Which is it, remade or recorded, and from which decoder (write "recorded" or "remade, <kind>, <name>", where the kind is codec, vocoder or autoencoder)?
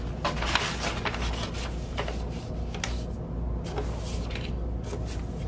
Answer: recorded